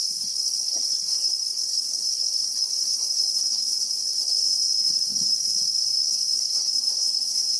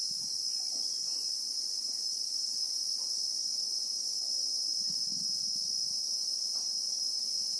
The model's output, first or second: first